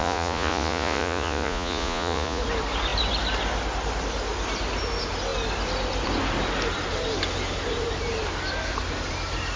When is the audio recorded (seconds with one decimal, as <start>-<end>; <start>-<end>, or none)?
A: 2.4-9.6